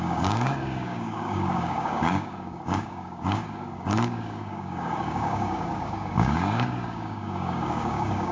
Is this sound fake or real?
fake